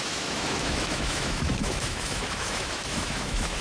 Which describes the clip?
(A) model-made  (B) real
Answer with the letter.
A